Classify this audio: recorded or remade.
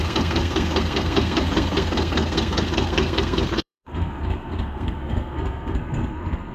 remade